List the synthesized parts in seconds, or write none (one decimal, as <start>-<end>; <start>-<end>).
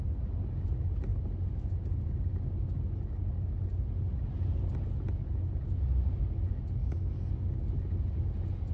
6.8-7.3